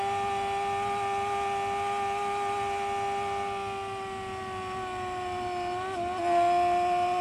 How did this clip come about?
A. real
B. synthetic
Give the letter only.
A